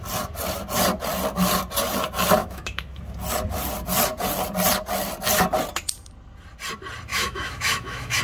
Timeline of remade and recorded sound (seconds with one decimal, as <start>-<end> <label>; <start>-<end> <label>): 0.0-2.4 recorded; 2.4-3.0 remade; 3.0-7.1 recorded; 7.1-8.2 remade